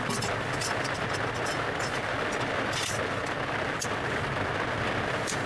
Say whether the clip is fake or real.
real